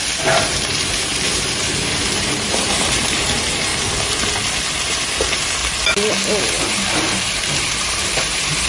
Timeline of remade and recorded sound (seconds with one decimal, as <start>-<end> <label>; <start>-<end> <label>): 0.0-3.7 remade; 3.7-4.5 recorded; 4.5-5.6 remade; 5.6-6.4 recorded; 6.4-8.7 remade